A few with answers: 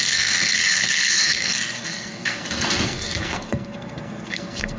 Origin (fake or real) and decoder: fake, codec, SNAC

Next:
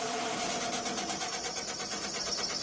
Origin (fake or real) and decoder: real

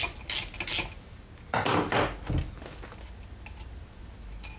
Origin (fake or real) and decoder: real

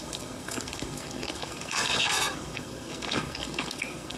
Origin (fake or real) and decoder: fake, codec, SNAC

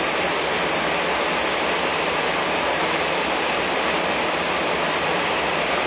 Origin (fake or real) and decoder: real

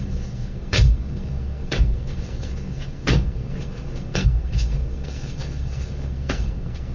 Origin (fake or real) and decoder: fake, codec, SNAC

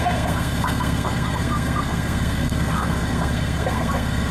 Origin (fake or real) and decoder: fake, codec, SNAC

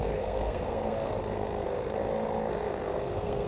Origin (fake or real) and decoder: fake, codec, SNAC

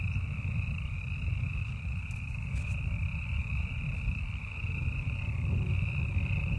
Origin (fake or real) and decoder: real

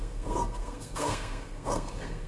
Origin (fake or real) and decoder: fake, codec, SNAC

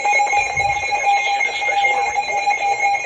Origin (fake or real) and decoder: real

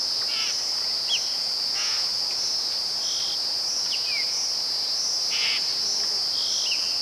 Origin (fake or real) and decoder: real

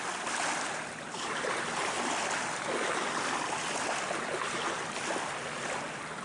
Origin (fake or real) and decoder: real